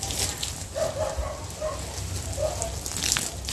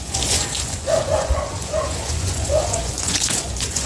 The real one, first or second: first